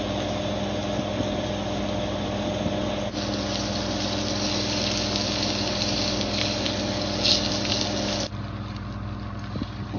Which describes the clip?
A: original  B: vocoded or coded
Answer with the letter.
A